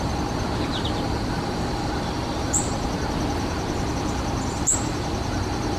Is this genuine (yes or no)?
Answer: yes